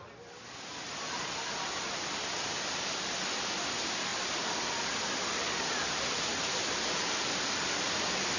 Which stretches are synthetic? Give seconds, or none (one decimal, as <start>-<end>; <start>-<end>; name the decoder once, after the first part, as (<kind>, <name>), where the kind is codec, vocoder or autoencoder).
none